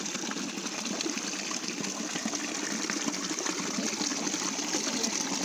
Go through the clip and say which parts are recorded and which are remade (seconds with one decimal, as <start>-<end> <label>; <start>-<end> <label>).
0.0-5.4 recorded

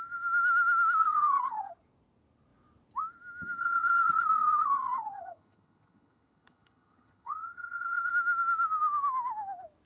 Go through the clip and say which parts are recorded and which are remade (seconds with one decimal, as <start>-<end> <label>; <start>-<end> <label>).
0.0-1.0 recorded; 1.0-1.7 remade; 1.7-3.6 recorded; 3.6-8.1 remade; 8.1-9.9 recorded

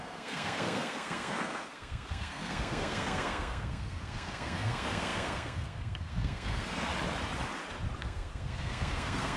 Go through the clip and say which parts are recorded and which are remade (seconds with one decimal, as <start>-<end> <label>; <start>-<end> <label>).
0.0-6.9 remade; 6.9-8.0 recorded; 8.0-9.4 remade

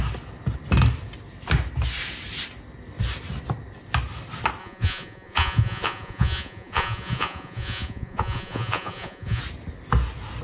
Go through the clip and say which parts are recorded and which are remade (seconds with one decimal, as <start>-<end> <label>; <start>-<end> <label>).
0.0-4.6 recorded; 4.6-9.4 remade; 9.4-10.4 recorded

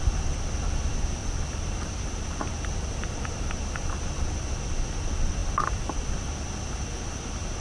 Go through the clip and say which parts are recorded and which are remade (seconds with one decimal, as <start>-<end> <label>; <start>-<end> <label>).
0.0-1.2 recorded; 1.2-3.6 remade; 3.6-7.6 recorded